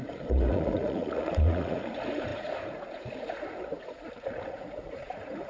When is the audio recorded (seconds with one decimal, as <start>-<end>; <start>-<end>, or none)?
none